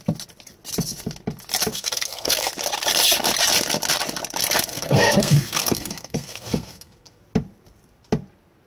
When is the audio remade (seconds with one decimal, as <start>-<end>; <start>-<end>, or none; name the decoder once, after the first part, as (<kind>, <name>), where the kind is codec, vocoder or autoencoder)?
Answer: 1.7-2.5 (codec, SNAC); 4.7-7.2